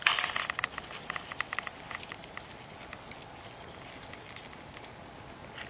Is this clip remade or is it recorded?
recorded